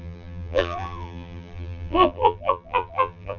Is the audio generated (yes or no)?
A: yes